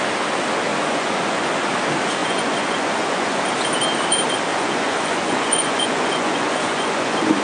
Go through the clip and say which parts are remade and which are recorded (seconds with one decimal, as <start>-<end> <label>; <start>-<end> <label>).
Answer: 0.0-0.7 recorded; 0.7-1.5 remade; 1.5-2.2 recorded; 2.2-3.4 remade; 3.4-4.5 recorded; 4.5-7.4 remade